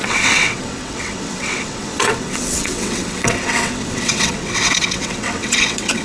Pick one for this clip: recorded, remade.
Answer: remade